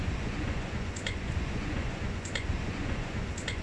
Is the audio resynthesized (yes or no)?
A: yes